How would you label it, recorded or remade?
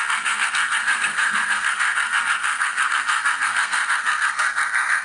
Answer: remade